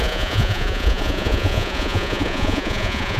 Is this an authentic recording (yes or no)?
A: no